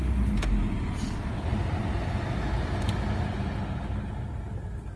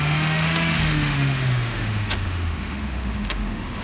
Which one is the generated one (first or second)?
second